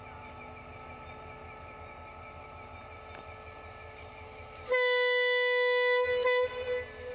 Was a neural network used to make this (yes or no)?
no